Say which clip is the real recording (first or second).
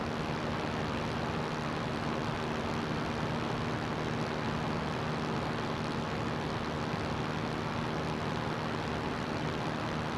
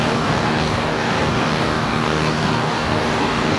first